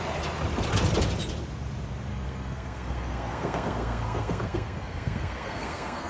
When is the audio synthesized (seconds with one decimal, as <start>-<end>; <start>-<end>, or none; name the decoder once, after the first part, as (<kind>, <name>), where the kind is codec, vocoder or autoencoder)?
2.1-6.1 (codec, SNAC)